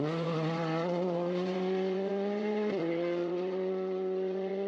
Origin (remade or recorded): remade